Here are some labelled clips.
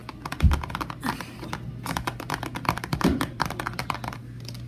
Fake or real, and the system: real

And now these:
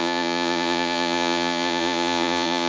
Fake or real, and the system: fake, vocoder, Vocos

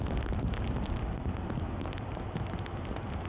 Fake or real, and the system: real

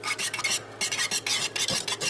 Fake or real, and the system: real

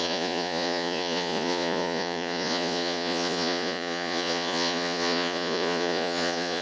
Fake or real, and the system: fake, vocoder, Vocos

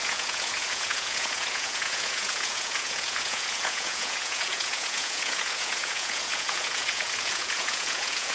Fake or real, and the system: fake, vocoder, Vocos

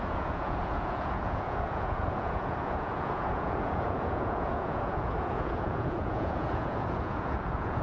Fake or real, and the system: fake, vocoder, Vocos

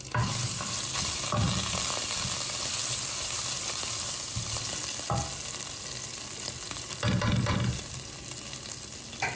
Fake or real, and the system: real